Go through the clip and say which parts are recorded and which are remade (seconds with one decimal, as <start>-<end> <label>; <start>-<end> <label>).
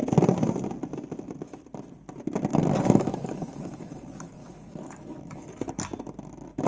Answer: 0.0-2.5 recorded; 2.5-5.8 remade; 5.8-6.7 recorded